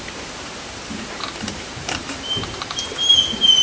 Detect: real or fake fake